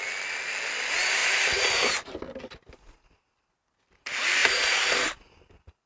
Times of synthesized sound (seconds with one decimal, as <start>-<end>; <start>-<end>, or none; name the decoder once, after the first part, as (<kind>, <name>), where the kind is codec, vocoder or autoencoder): none